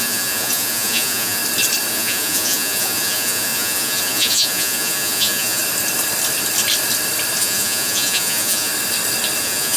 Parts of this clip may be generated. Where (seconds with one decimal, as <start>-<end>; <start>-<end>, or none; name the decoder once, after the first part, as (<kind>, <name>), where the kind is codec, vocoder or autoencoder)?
0.0-1.4 (vocoder, Vocos); 1.9-5.6; 7.4-8.7; 9.4-9.8